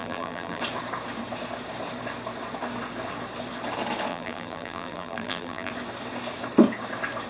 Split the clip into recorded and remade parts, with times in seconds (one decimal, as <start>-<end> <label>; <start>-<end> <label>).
0.0-0.6 remade; 0.6-4.1 recorded; 4.1-5.7 remade; 5.7-7.3 recorded